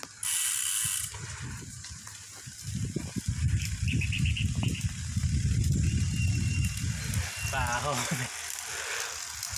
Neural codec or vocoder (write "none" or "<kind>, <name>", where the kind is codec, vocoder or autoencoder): none